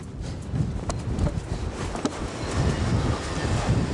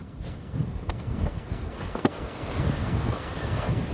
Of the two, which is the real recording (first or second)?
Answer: first